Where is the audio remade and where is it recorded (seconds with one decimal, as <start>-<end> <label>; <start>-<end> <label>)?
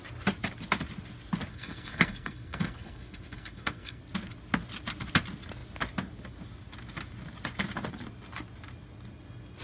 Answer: 0.0-1.5 recorded; 1.5-4.0 remade; 4.0-9.6 recorded